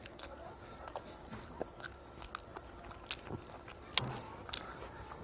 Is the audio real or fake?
real